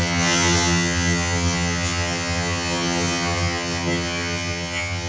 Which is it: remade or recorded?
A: remade